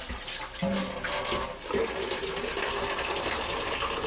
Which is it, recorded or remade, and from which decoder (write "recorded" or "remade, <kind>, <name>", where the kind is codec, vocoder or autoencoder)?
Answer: recorded